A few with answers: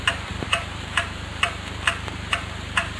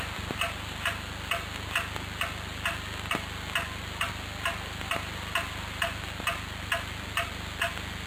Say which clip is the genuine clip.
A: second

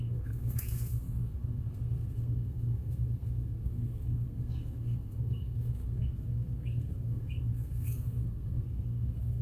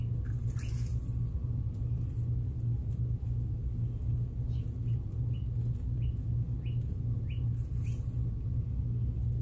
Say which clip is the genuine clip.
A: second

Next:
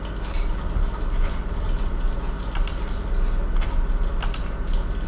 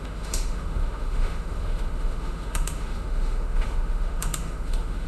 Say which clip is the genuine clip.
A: first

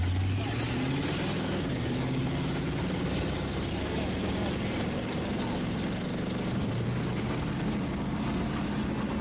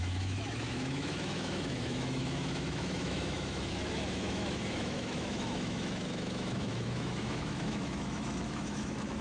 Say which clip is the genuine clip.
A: first